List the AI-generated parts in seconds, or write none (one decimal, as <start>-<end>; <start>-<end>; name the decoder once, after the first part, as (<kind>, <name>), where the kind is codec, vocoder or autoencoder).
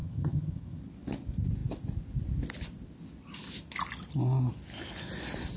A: 0.0-0.8 (vocoder, HiFi-GAN)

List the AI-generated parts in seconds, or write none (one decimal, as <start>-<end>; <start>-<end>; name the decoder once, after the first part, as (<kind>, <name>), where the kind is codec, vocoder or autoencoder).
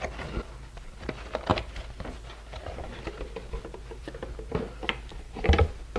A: none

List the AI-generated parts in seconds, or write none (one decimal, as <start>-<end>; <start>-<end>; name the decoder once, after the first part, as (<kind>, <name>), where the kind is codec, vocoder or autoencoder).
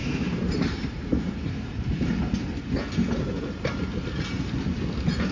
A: 0.0-2.1 (vocoder, BigVGAN v2)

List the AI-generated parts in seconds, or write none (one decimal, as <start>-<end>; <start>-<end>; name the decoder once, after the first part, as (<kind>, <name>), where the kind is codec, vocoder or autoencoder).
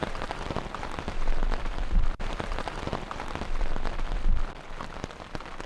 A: 0.0-3.4 (vocoder, BigVGAN v2)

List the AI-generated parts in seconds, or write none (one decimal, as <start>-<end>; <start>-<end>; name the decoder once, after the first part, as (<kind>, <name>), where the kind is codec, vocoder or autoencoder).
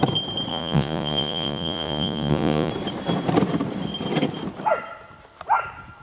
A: 0.5-2.7 (vocoder, Vocos)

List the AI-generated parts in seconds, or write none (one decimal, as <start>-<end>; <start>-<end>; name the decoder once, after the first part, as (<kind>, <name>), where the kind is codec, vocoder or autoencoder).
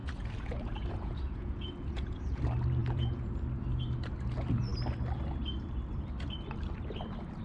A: 0.0-2.4 (vocoder, Vocos); 2.8-3.3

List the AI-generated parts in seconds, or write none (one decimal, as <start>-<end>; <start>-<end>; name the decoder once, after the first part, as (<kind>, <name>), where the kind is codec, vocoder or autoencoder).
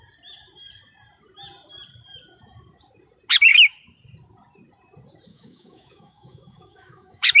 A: 5.3-7.4 (autoencoder, DAC-VAE)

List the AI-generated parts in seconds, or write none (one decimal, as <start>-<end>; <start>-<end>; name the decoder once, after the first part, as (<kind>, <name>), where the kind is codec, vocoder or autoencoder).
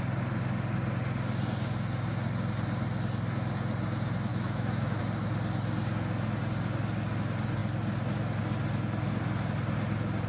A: 4.3-5.0 (autoencoder, DAC-VAE)